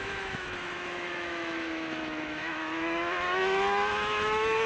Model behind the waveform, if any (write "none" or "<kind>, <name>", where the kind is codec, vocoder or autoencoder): autoencoder, DAC-VAE